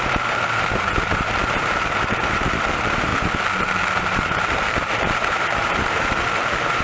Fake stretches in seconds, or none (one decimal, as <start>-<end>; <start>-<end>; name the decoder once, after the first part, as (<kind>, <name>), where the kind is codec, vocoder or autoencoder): 0.0-3.1 (vocoder, BigVGAN v2); 3.9-6.8